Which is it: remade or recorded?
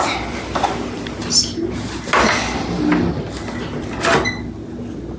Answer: recorded